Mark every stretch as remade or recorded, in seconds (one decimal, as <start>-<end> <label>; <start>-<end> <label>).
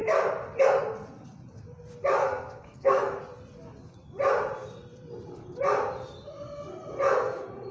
0.0-2.2 recorded; 2.2-3.2 remade; 3.2-7.7 recorded